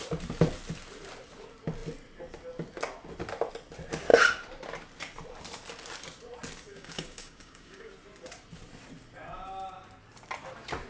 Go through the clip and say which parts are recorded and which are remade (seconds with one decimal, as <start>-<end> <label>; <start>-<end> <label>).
0.0-6.7 recorded; 6.7-7.9 remade; 7.9-10.9 recorded